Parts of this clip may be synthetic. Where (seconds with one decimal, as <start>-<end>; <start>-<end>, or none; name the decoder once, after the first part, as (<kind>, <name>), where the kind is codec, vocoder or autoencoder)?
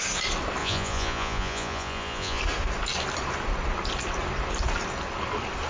0.6-2.4 (vocoder, Vocos)